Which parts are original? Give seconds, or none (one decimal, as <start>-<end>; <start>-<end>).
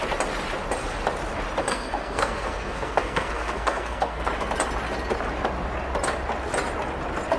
0.0-1.6; 4.3-7.4